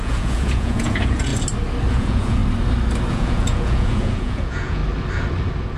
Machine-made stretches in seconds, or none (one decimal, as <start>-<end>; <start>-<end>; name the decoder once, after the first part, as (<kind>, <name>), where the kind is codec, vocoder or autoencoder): 0.0-1.3 (vocoder, Vocos); 1.9-2.4; 3.1-4.8